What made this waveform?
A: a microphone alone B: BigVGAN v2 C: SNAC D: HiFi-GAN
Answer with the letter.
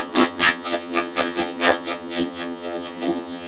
D